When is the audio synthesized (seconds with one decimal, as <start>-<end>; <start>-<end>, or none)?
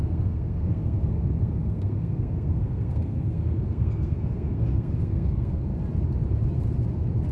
0.0-5.7